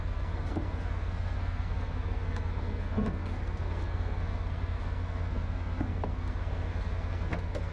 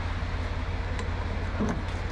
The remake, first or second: first